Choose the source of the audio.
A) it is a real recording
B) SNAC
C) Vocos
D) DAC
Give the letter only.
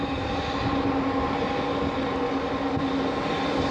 A